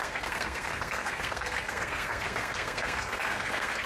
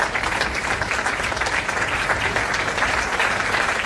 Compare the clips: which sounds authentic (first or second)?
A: second